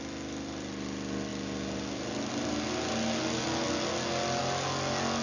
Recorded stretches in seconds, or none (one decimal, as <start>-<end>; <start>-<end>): 0.0-5.2